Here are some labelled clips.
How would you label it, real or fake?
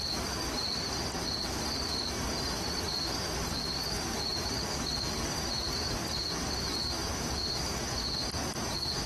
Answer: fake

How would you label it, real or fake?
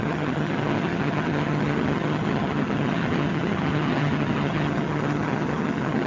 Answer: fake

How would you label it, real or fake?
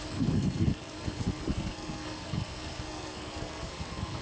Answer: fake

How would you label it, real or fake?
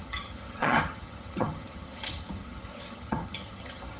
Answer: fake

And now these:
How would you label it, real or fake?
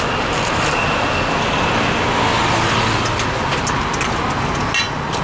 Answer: real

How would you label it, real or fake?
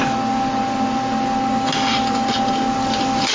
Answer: real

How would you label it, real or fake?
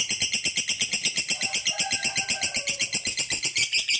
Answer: real